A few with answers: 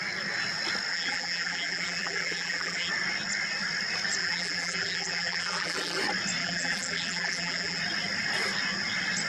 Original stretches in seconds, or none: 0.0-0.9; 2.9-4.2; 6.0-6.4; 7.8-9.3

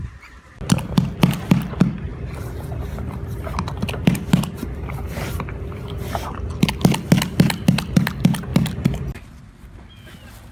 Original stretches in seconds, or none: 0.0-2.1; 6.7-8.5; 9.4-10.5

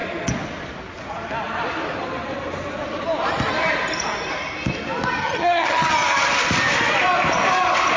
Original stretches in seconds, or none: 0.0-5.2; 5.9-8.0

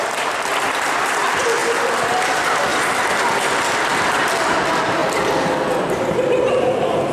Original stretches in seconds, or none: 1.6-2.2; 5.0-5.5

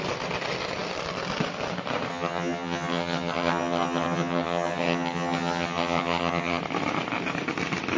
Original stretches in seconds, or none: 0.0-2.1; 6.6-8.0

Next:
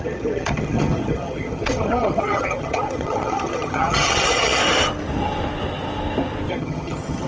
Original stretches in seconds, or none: 4.6-6.5